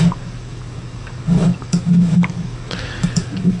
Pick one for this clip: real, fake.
fake